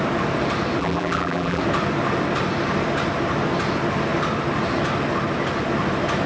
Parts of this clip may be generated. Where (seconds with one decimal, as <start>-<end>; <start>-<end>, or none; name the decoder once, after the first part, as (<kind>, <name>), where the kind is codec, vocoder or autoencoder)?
0.8-1.6 (vocoder, BigVGAN v2)